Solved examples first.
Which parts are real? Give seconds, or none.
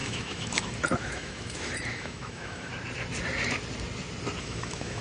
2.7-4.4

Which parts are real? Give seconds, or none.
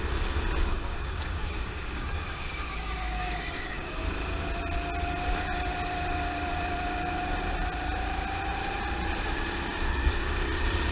0.0-0.8; 4.0-9.8; 10.3-10.9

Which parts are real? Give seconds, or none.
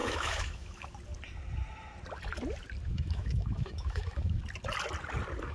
0.9-2.9; 4.4-5.5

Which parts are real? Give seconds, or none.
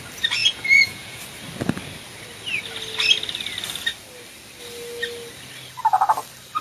0.0-0.4; 1.2-6.6